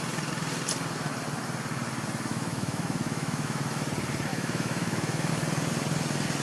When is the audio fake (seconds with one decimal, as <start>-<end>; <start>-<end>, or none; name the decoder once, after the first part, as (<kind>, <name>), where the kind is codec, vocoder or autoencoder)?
2.3-3.6 (autoencoder, DAC-VAE); 4.3-5.3